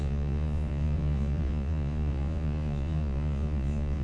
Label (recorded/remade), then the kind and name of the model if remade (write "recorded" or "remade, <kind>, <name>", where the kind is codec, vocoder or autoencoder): remade, vocoder, Vocos